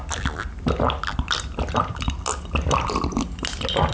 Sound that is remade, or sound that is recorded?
recorded